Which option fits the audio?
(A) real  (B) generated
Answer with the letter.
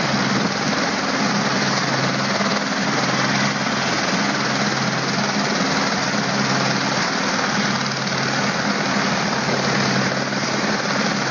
A